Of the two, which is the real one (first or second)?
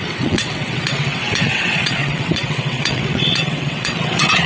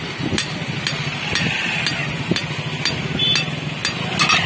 second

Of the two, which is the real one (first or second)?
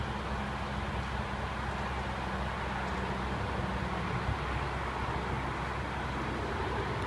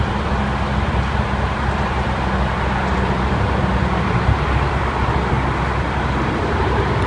first